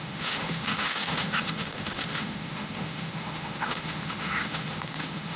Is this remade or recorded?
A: remade